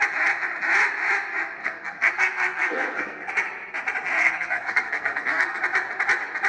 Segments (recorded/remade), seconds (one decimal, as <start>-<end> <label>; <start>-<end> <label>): 0.0-1.6 recorded; 1.6-3.3 remade; 3.3-4.2 recorded; 4.2-5.6 remade; 5.6-6.5 recorded